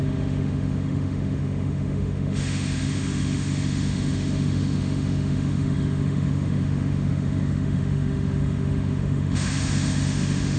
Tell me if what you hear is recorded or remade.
remade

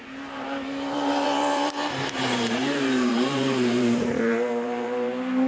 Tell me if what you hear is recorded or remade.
remade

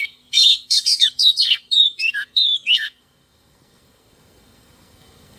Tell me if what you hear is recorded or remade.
remade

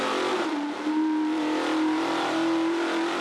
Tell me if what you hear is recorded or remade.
remade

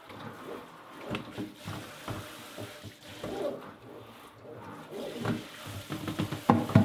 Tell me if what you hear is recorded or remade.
recorded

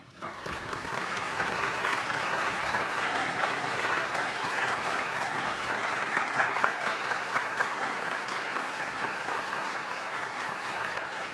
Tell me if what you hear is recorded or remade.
remade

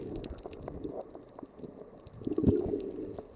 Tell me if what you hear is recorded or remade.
recorded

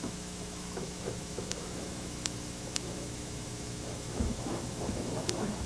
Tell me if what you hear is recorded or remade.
remade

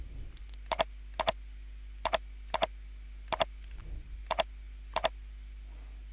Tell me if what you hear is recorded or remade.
recorded